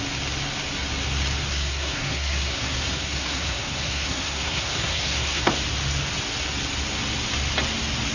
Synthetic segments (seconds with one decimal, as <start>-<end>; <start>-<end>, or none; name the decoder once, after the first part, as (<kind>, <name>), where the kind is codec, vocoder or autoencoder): 1.5-5.5 (codec, SNAC)